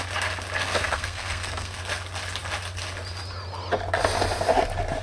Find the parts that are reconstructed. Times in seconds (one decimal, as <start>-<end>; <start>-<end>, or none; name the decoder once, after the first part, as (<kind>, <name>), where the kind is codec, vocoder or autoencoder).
0.6-1.8 (codec, SNAC)